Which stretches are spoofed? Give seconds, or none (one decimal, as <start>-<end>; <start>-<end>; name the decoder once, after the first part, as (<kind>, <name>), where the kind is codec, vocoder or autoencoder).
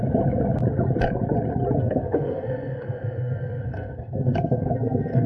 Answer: 1.8-5.3 (codec, SNAC)